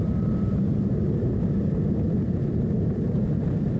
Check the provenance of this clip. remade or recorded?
remade